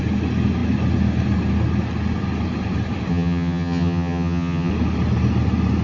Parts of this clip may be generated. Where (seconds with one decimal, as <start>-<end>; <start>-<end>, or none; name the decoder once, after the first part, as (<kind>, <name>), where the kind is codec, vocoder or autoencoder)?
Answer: 3.1-4.7 (vocoder, HiFi-GAN)